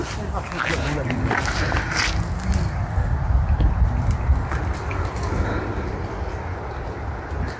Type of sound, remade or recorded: recorded